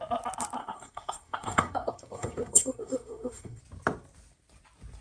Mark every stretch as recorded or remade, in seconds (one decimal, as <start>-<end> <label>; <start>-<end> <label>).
0.0-0.6 recorded; 0.6-3.6 remade; 3.6-5.0 recorded